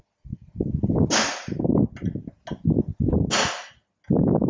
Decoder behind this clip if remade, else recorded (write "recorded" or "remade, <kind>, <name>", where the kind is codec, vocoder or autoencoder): recorded